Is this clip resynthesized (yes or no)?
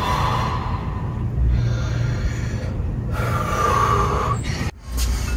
no